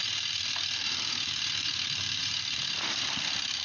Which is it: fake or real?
fake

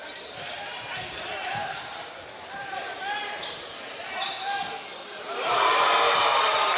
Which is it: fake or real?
fake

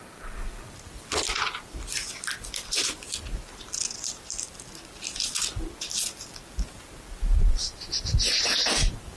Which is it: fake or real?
real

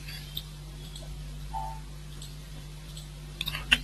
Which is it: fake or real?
fake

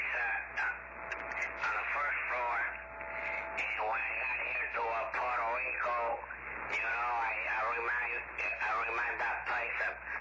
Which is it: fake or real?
real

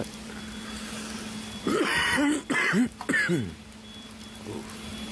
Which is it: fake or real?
real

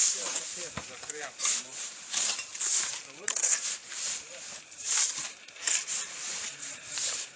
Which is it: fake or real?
fake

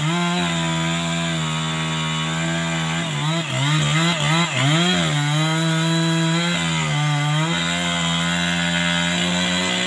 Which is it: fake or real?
real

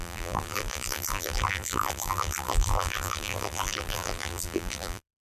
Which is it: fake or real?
fake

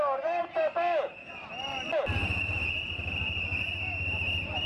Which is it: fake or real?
real